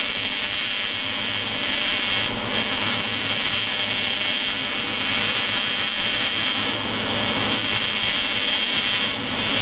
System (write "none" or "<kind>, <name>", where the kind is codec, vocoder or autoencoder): autoencoder, DAC-VAE